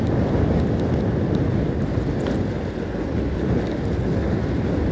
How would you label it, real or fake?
real